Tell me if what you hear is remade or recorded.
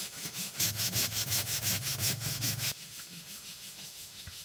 remade